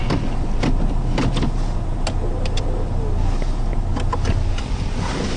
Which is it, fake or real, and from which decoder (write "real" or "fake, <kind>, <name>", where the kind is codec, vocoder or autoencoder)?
real